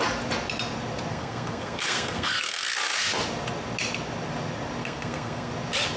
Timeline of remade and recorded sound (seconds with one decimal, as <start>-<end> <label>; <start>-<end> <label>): 0.0-1.1 recorded; 1.1-2.7 remade; 2.7-4.8 recorded; 4.8-5.5 remade; 5.5-6.0 recorded